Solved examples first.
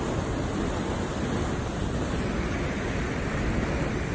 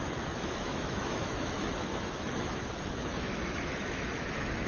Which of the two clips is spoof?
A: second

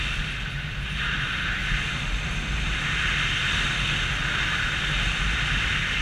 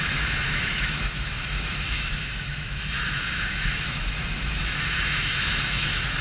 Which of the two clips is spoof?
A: second